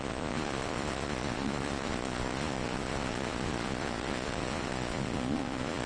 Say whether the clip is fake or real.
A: fake